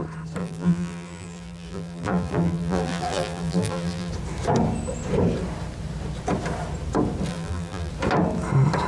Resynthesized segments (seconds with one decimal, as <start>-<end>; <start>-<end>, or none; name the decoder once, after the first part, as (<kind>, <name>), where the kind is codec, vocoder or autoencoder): 0.4-4.1 (vocoder, BigVGAN v2); 7.3-7.9